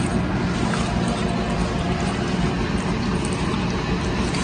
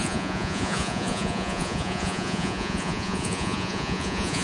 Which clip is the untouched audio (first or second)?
first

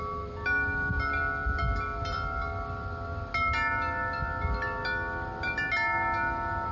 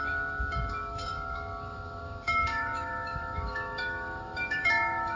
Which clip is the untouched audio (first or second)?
first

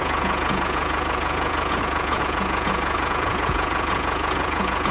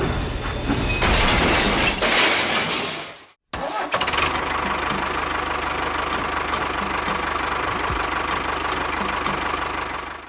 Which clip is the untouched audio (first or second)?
second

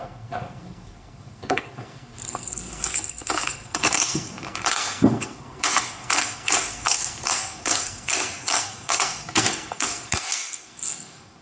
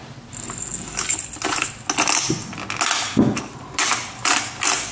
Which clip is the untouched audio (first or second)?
second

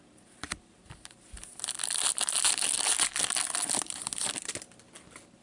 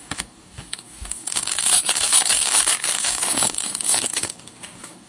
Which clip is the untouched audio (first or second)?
first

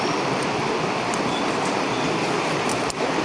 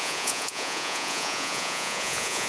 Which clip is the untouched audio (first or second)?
first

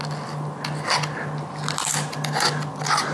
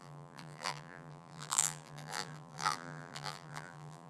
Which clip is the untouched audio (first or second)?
first